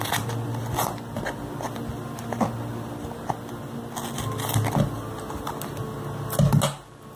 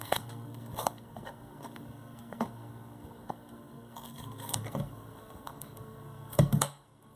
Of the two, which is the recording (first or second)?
first